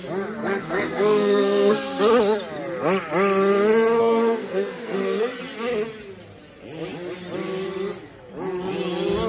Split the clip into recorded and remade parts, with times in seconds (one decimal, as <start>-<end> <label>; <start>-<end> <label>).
0.0-0.4 recorded; 0.4-2.0 remade; 2.0-4.0 recorded; 4.0-5.4 remade; 5.4-9.3 recorded